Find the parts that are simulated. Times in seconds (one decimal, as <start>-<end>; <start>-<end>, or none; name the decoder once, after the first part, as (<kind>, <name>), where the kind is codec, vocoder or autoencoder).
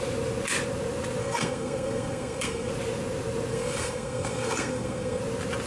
1.2-2.7 (codec, SNAC); 3.5-5.2